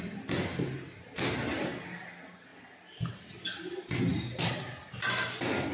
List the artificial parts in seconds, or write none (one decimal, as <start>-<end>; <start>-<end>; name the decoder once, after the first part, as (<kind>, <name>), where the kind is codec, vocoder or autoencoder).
none